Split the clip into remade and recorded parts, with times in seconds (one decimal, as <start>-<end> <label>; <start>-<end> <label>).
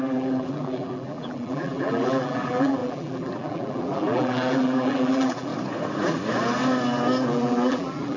0.0-5.5 remade; 5.5-7.3 recorded; 7.3-8.2 remade